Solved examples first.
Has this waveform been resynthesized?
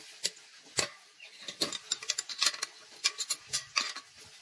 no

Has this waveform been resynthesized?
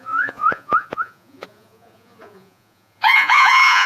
yes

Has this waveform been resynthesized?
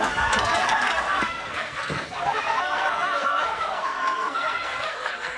yes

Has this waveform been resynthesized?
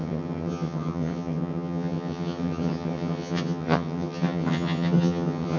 yes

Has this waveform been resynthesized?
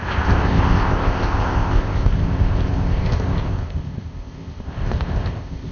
yes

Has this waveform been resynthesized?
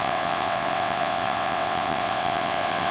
yes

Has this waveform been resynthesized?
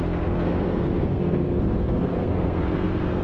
yes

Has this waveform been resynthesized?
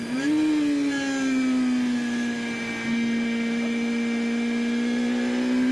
no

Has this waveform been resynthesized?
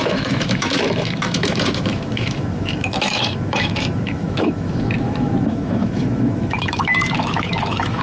yes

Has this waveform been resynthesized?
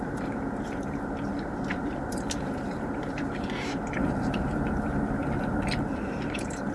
yes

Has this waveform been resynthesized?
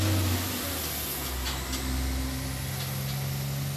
no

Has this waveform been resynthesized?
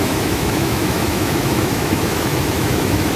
yes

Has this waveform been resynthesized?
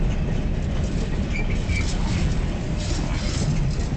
no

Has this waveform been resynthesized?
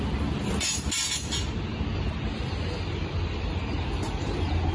no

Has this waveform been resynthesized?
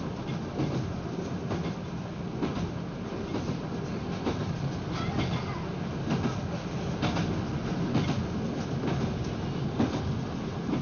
no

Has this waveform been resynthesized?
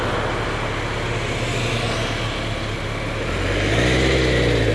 no